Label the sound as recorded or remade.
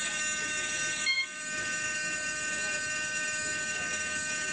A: remade